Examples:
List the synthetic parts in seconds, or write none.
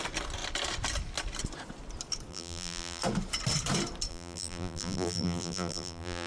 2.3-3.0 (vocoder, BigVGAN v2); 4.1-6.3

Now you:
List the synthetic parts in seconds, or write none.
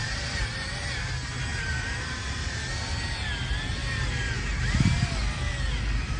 0.0-0.7 (vocoder, BigVGAN v2); 1.5-2.6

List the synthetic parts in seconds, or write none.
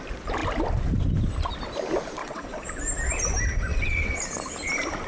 2.2-2.8 (vocoder, WaveNeXt); 3.7-4.2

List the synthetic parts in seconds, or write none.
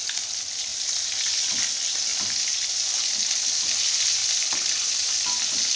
0.7-1.4 (vocoder, BigVGAN v2); 4.2-5.1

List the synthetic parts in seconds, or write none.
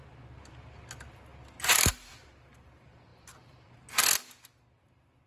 none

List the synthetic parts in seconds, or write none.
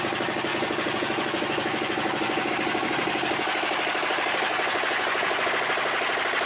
0.5-2.5 (vocoder, Vocos); 4.5-5.5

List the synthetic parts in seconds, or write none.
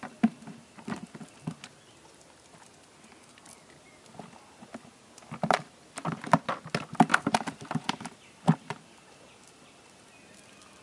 7.1-7.9 (vocoder, BigVGAN v2)